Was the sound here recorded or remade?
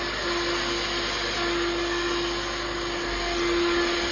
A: recorded